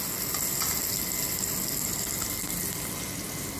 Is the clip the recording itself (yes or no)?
yes